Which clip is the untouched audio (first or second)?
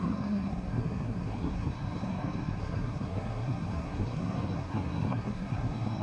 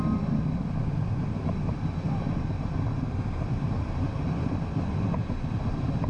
second